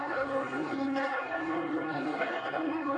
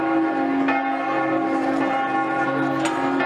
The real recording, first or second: second